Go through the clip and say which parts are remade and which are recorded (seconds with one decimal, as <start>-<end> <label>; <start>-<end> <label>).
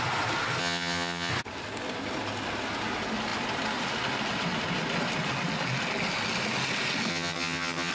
0.0-0.6 recorded; 0.6-1.3 remade; 1.3-7.1 recorded; 7.1-7.9 remade